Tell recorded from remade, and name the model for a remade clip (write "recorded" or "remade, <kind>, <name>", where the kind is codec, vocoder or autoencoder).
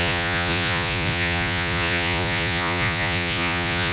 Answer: remade, vocoder, Vocos